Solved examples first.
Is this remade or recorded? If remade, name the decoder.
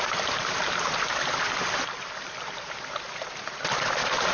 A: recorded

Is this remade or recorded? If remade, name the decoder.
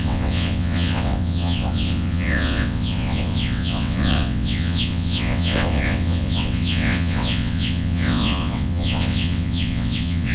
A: remade, vocoder, WaveNeXt